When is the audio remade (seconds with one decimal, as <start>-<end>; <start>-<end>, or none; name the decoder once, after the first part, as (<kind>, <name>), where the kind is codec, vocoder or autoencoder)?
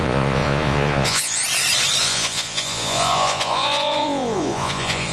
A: 0.0-1.4 (vocoder, Vocos); 2.0-5.1